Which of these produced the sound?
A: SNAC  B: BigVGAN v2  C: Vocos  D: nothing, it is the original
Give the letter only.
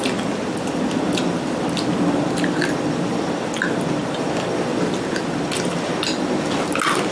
D